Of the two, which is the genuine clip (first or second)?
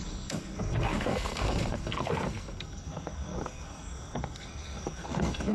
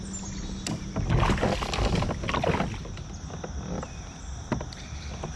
second